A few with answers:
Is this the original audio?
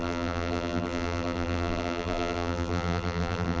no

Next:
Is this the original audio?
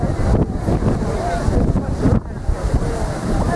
yes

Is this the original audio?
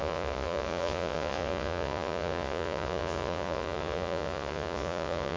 no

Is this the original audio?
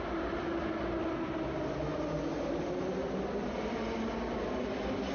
yes